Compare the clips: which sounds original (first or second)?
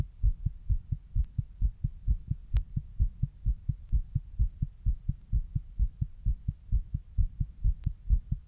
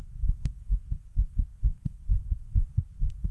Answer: first